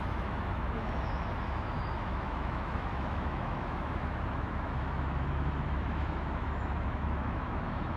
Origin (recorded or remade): remade